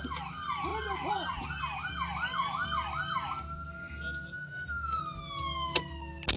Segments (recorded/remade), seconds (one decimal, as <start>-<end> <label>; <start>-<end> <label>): 0.0-4.4 recorded; 4.4-5.0 remade; 5.0-6.4 recorded